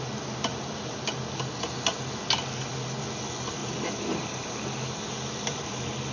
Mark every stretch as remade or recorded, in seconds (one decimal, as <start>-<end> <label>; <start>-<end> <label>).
0.0-6.1 recorded